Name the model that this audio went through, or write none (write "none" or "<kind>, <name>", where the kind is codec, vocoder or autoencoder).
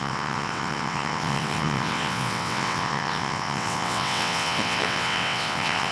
vocoder, WaveNeXt